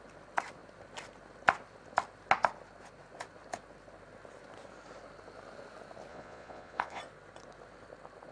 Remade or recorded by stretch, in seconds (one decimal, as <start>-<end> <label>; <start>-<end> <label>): 0.0-6.1 recorded; 6.1-7.0 remade; 7.0-8.3 recorded